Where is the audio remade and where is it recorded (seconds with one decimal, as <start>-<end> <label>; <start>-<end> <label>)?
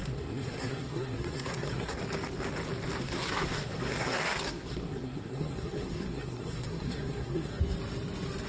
0.0-2.0 remade; 2.0-3.0 recorded; 3.0-7.6 remade; 7.6-8.5 recorded